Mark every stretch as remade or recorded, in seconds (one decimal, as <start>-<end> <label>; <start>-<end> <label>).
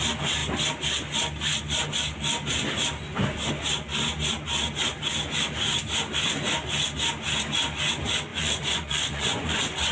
0.0-8.3 recorded; 8.3-9.9 remade